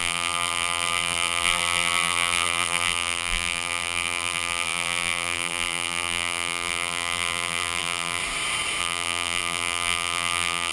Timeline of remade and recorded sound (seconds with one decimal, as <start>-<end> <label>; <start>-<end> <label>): 0.0-8.2 remade; 8.2-8.8 recorded; 8.8-10.7 remade